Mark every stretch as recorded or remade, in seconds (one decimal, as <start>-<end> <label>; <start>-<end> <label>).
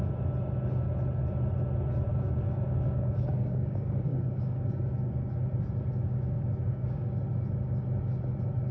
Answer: 0.0-2.1 recorded; 2.1-5.3 remade; 5.3-6.0 recorded; 6.0-7.2 remade; 7.2-8.7 recorded